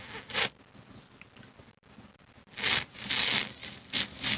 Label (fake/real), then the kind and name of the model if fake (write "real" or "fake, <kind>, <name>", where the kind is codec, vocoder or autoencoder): real